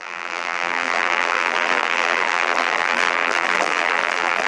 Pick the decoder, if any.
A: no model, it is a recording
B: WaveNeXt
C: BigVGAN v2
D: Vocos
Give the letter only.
C